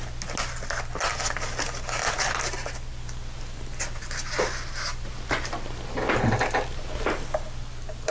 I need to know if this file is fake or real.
real